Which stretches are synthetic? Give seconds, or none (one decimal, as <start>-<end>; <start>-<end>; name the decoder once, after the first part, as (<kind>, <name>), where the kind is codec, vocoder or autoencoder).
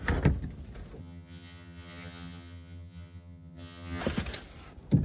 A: 1.0-4.0 (vocoder, HiFi-GAN)